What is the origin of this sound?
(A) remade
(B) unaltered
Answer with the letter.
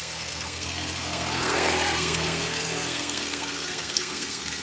A